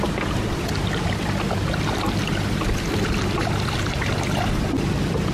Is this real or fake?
real